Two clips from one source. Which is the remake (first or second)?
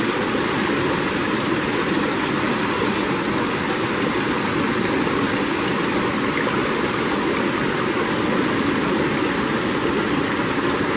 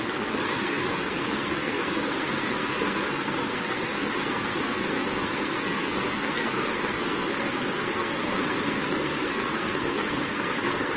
second